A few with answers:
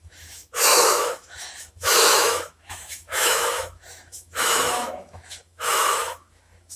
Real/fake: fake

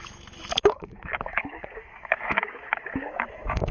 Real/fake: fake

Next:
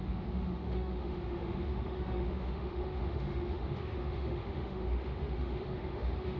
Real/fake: fake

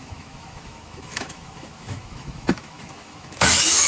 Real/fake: fake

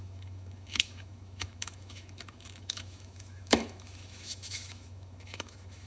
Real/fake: fake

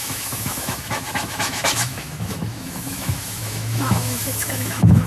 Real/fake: fake